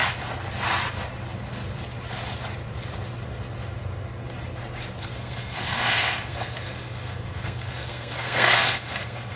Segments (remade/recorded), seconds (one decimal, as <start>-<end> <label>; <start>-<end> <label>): 0.0-5.0 recorded; 5.0-9.4 remade